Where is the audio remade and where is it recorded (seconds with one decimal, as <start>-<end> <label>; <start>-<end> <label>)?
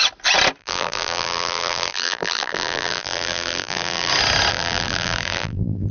0.0-0.6 recorded; 0.6-4.1 remade; 4.1-4.5 recorded; 4.5-5.9 remade